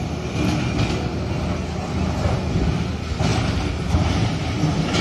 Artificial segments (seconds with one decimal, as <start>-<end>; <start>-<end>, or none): 3.3-4.4